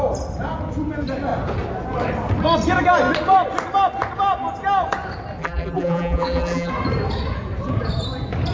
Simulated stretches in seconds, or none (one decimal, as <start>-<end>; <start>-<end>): 5.4-6.7